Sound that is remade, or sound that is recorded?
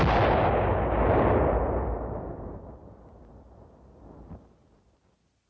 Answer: recorded